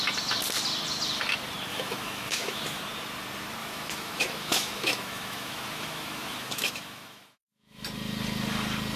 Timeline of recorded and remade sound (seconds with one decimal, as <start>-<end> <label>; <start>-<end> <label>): 0.0-1.7 recorded; 1.7-2.8 remade; 2.8-3.6 recorded; 3.6-7.8 remade; 7.8-9.0 recorded